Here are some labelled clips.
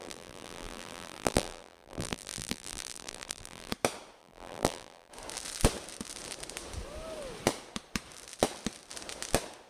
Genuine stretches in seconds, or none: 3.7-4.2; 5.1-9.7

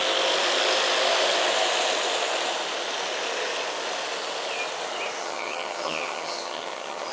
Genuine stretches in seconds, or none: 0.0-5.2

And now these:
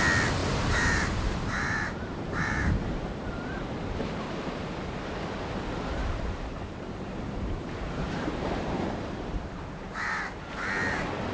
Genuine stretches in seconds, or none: 0.0-0.4; 3.3-6.0; 10.2-11.3

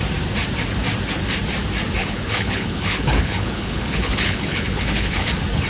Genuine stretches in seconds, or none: 0.0-2.0; 5.3-5.7